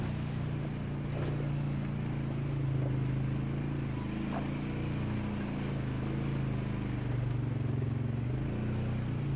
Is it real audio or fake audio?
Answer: real